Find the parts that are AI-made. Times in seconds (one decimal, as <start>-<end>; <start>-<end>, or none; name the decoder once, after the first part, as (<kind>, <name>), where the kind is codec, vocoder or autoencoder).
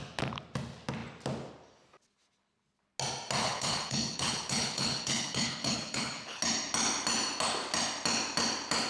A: 3.4-6.4 (codec, HILCodec)